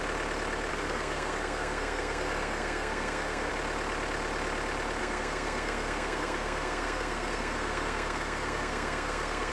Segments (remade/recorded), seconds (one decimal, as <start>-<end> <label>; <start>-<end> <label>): 0.0-0.7 recorded; 0.7-3.5 remade; 3.5-5.0 recorded; 5.0-9.5 remade